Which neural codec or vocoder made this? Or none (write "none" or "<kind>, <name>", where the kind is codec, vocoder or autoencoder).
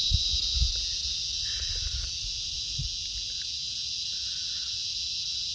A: none